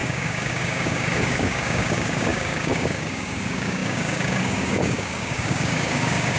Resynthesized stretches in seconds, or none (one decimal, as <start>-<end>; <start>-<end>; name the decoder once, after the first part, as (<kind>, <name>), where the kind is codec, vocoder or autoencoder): 0.0-6.4 (codec, DAC)